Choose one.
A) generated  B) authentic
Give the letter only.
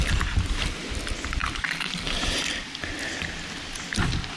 B